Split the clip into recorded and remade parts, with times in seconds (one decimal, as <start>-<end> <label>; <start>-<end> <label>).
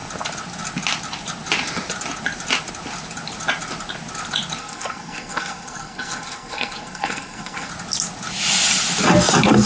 0.0-4.6 recorded; 4.6-7.7 remade; 7.7-9.7 recorded